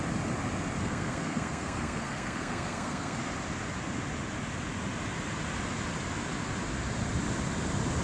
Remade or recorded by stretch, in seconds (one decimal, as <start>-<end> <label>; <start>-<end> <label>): 0.0-0.8 recorded; 0.8-3.2 remade; 3.2-8.0 recorded